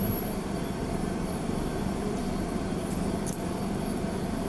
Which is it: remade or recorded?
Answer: remade